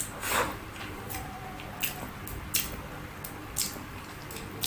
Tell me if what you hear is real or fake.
real